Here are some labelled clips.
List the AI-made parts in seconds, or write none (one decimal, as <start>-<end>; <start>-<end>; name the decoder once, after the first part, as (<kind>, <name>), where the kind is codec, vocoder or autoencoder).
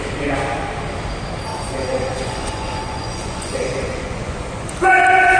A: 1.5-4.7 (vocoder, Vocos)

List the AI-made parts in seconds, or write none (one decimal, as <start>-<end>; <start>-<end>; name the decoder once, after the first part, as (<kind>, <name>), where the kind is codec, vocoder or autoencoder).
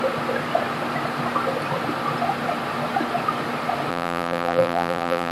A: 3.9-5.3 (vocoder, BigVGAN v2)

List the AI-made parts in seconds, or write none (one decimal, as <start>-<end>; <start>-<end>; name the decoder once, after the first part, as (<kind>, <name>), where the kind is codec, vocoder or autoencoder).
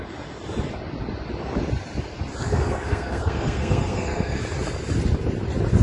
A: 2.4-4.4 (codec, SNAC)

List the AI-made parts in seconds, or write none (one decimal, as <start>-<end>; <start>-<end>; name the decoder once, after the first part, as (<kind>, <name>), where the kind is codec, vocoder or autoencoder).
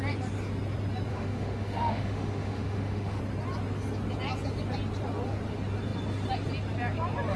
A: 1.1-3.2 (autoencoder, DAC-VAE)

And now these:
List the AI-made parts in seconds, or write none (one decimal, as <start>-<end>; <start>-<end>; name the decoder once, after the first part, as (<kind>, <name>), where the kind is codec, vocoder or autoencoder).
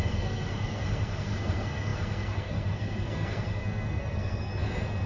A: 0.0-4.5 (codec, SNAC)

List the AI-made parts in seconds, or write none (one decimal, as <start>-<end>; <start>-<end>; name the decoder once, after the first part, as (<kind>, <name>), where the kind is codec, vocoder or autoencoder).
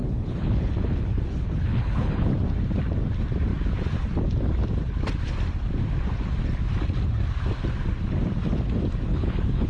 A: 0.0-2.3 (codec, HILCodec); 9.1-9.7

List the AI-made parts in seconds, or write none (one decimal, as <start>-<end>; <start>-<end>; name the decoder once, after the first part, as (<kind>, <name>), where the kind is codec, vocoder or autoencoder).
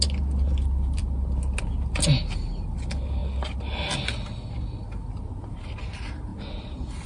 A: none